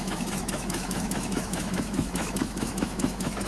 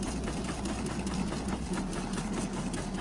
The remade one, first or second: first